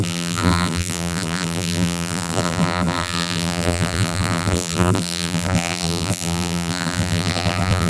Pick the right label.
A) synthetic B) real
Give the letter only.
A